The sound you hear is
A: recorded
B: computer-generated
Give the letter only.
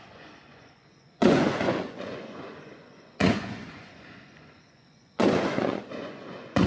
B